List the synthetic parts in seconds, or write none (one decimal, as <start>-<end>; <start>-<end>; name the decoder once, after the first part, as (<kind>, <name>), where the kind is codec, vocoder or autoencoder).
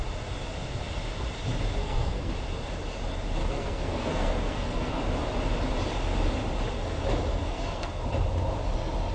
1.8-2.3 (codec, SNAC); 3.4-5.0; 7.3-8.0